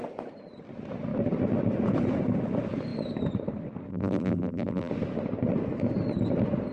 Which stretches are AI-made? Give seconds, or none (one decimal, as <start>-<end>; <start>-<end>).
3.9-4.9